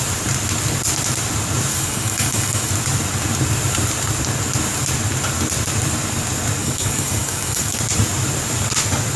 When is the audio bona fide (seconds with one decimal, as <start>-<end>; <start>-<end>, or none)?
0.0-1.7; 2.7-6.6; 7.8-9.2